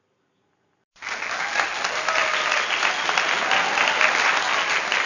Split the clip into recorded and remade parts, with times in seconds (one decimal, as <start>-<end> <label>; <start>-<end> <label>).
0.0-5.1 recorded

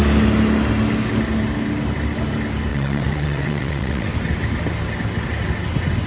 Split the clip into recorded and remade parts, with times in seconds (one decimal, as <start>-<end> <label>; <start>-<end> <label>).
0.0-2.7 recorded; 2.7-4.1 remade; 4.1-6.1 recorded

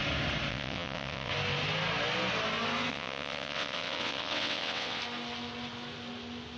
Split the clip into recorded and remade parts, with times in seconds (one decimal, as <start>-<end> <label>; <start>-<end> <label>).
0.0-0.5 recorded; 0.5-1.3 remade; 1.3-2.9 recorded; 2.9-5.0 remade; 5.0-6.6 recorded

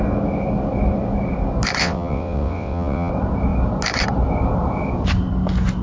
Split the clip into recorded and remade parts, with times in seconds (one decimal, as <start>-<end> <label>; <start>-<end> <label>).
0.0-1.8 recorded; 1.8-3.1 remade; 3.1-5.8 recorded